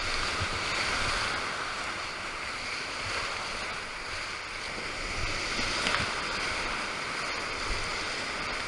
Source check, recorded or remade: recorded